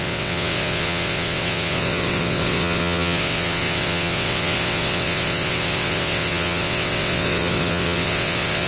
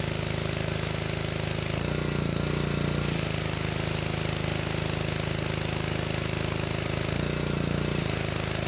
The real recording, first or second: second